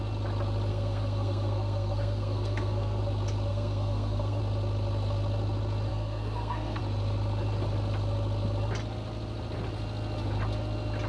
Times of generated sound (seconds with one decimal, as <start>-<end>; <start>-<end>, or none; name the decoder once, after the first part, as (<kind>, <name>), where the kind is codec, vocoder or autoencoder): 0.7-3.0 (codec, SNAC); 3.5-4.4; 5.9-6.8